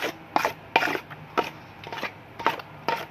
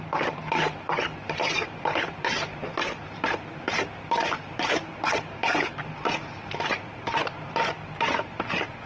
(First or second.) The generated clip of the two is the second